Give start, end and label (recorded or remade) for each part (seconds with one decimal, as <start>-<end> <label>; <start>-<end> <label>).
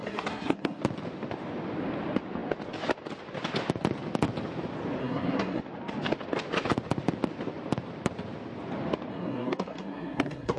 0.0-0.8 remade; 0.8-5.0 recorded; 5.0-5.6 remade; 5.6-9.1 recorded; 9.1-10.6 remade